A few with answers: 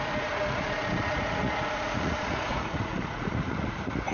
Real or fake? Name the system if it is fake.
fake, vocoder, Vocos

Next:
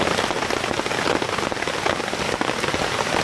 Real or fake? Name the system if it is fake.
real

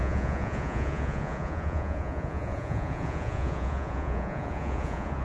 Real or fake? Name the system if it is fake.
fake, vocoder, Vocos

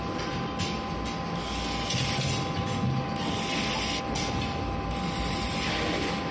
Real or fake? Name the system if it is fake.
real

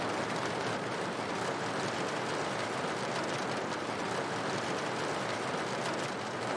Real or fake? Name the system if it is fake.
real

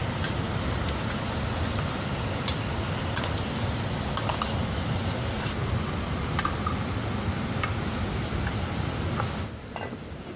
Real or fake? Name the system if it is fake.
real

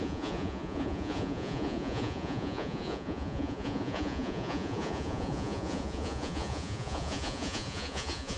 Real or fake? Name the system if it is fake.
fake, vocoder, Vocos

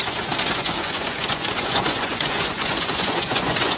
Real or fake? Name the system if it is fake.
fake, vocoder, Vocos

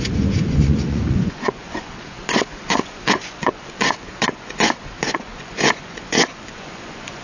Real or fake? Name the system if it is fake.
fake, vocoder, Vocos